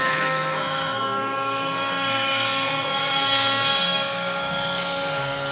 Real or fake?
fake